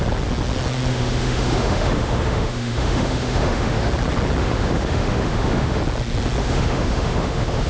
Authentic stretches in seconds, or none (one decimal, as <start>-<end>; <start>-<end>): 0.0-0.9; 3.9-4.4; 5.8-6.4

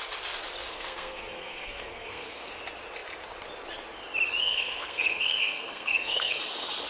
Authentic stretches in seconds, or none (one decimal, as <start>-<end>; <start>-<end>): 0.0-0.7; 2.5-4.4; 6.4-6.9

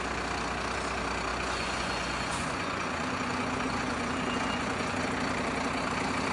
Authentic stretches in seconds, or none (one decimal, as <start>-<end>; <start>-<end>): 0.0-1.3; 5.0-6.3

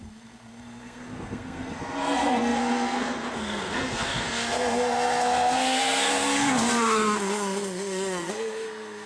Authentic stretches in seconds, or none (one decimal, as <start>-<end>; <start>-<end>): none